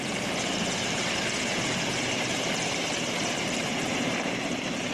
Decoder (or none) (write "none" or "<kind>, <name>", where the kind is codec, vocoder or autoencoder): vocoder, BigVGAN v2